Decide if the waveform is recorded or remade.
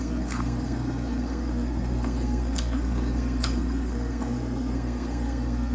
remade